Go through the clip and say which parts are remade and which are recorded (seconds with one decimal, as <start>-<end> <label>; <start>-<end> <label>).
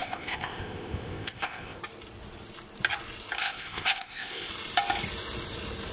0.0-1.8 remade; 1.8-3.4 recorded; 3.4-4.5 remade; 4.5-5.9 recorded